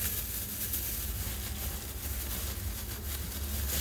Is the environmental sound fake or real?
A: real